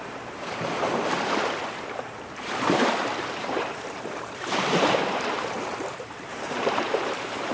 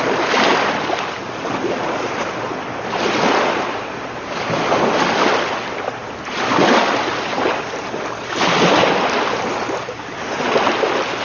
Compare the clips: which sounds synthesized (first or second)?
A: first